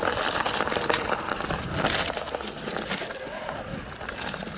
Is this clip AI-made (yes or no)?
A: no